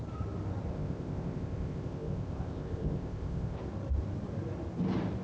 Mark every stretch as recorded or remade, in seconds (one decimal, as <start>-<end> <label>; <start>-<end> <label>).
0.0-0.7 recorded; 0.7-3.6 remade; 3.6-5.2 recorded